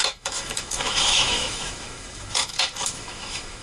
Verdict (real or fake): fake